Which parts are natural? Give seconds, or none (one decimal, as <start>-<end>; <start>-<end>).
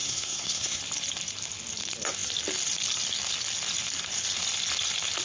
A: 0.8-5.2